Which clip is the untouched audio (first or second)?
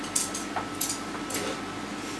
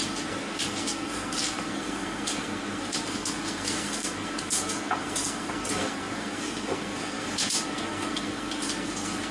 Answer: first